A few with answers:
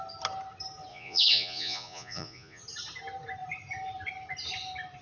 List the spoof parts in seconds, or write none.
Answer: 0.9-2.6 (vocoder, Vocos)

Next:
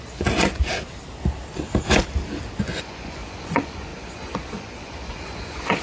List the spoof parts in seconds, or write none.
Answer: 0.0-0.5 (vocoder, Vocos); 2.6-5.8

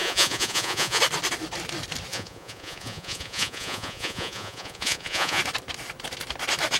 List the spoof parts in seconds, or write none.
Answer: 0.0-1.0 (vocoder, Vocos); 2.1-5.4

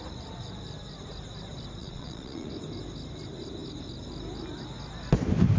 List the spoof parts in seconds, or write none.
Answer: 1.8-2.5 (vocoder, Vocos)

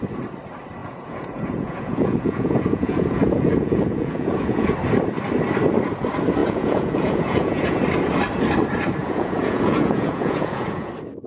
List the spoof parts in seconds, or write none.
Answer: 0.8-4.7 (vocoder, Vocos); 6.4-7.8; 9.0-10.9

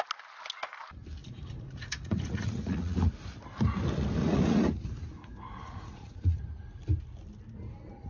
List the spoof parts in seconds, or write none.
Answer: 1.2-3.1 (vocoder, Vocos); 4.2-6.8

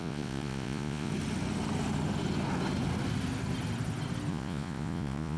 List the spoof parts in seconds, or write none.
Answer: 0.0-1.1 (vocoder, Vocos); 4.3-5.4

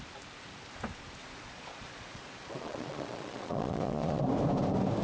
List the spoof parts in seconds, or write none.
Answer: 1.2-4.2 (vocoder, Vocos)